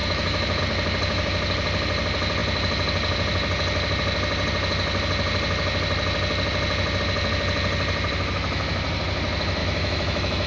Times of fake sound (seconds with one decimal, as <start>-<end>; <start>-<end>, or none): 0.0-0.6; 9.6-10.5